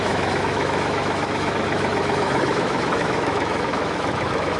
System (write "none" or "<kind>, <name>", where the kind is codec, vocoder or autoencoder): autoencoder, DAC-VAE